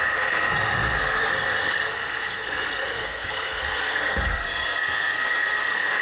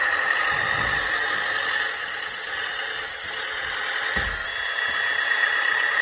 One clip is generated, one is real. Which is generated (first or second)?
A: first